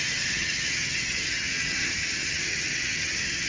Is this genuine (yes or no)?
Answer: no